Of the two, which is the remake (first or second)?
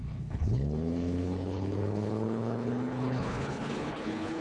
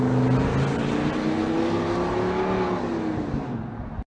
first